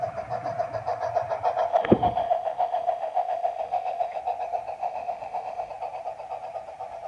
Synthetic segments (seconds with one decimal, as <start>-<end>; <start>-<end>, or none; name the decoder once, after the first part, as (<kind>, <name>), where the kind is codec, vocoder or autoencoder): 1.7-4.2 (autoencoder, DAC-VAE); 4.8-5.7